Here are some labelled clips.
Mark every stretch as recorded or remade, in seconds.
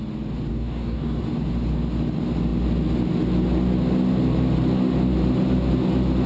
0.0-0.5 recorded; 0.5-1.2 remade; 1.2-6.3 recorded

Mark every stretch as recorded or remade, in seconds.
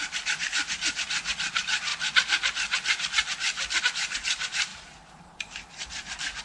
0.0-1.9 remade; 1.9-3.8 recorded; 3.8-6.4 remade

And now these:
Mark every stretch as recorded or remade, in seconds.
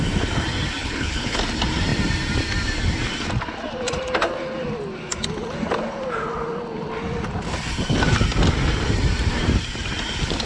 0.0-0.8 recorded; 0.8-1.4 remade; 1.4-10.5 recorded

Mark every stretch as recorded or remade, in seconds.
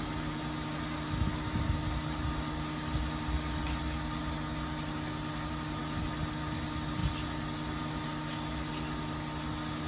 0.0-9.9 recorded